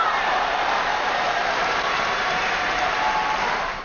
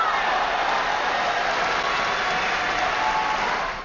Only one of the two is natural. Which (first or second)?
second